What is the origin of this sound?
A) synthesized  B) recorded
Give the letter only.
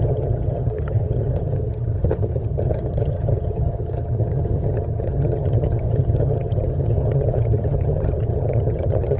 A